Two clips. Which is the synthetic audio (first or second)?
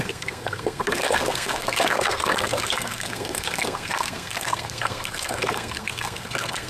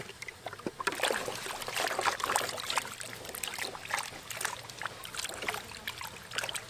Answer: first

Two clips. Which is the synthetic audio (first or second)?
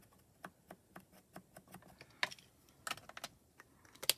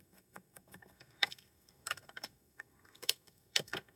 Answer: second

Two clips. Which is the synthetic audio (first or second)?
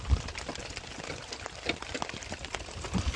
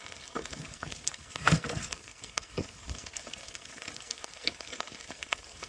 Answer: second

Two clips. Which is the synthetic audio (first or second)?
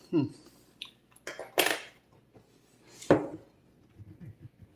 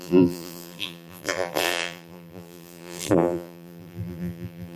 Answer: second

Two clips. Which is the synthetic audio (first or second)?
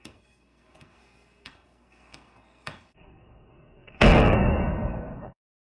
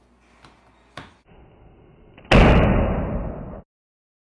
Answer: first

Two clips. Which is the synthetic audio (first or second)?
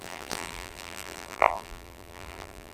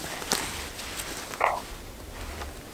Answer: first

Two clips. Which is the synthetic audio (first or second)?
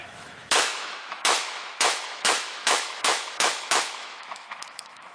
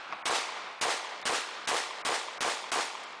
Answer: first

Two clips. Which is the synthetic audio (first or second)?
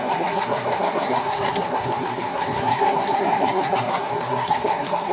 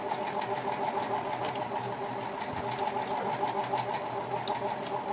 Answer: first